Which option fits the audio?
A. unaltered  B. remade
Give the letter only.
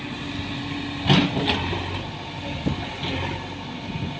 A